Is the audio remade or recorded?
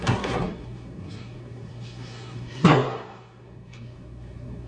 remade